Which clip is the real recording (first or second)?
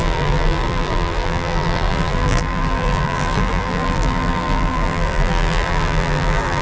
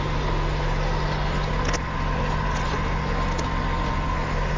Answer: second